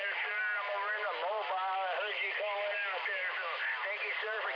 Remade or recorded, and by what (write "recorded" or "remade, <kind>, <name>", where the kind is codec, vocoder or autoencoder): recorded